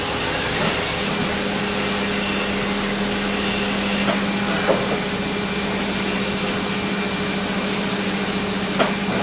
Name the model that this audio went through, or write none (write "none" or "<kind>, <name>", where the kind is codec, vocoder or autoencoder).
none